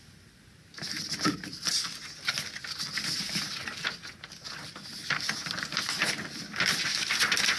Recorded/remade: recorded